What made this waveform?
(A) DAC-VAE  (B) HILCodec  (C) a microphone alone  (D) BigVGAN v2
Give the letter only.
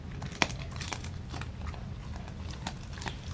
C